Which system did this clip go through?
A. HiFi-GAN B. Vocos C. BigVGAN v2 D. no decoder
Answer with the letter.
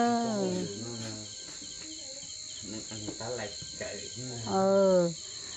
D